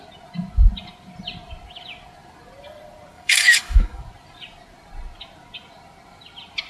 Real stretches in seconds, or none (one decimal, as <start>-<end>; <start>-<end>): 0.0-3.1; 4.0-6.7